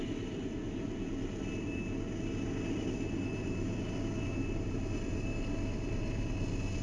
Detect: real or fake real